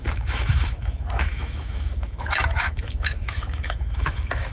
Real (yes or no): no